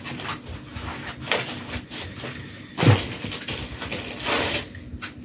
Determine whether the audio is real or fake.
real